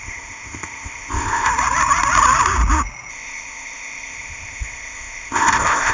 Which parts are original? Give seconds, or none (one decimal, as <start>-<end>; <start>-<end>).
1.5-3.1